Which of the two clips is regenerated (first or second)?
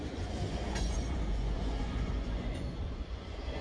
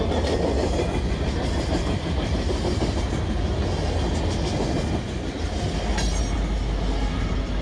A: first